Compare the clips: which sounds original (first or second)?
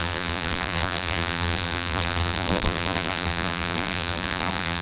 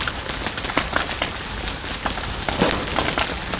second